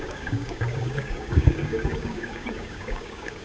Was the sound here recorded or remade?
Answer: remade